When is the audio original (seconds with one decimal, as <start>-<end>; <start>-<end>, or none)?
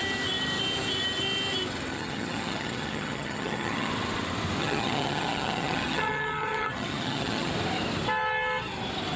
0.0-1.9; 3.9-4.6; 7.5-9.2